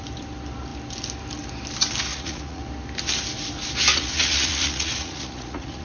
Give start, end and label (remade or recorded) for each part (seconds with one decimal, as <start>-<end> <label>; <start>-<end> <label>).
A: 0.0-2.1 recorded; 2.1-2.6 remade; 2.6-3.9 recorded; 3.9-5.8 remade

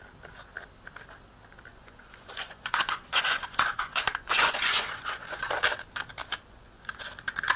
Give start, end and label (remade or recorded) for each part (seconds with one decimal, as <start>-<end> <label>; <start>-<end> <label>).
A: 0.0-1.7 recorded; 1.7-5.5 remade; 5.5-6.2 recorded; 6.2-7.1 remade; 7.1-7.6 recorded

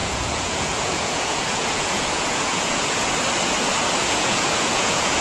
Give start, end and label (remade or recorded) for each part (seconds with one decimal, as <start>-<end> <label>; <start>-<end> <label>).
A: 0.0-3.1 remade; 3.1-4.0 recorded; 4.0-5.2 remade

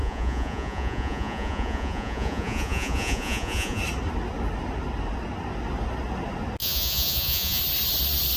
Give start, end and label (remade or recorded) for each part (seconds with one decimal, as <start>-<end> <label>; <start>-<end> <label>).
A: 0.0-3.8 remade; 3.8-6.6 recorded; 6.6-7.6 remade; 7.6-8.4 recorded

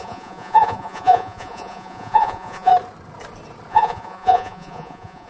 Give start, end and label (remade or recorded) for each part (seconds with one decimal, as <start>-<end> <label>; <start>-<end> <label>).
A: 0.0-2.7 remade; 2.7-3.7 recorded; 3.7-5.3 remade

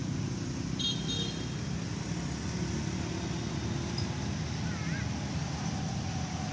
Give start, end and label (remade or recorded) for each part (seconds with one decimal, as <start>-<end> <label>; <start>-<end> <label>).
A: 0.0-6.5 recorded

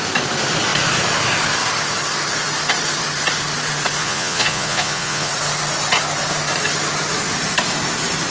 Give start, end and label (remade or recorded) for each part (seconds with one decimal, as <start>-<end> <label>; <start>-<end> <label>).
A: 0.0-4.0 recorded; 4.0-5.3 remade; 5.3-8.3 recorded

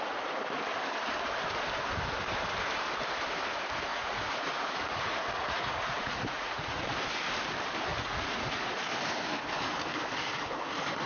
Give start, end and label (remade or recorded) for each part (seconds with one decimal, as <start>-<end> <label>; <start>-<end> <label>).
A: 0.0-3.9 recorded; 3.9-6.8 remade; 6.8-7.9 recorded; 7.9-8.8 remade; 8.8-11.1 recorded